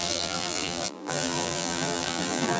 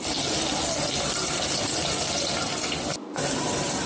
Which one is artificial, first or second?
first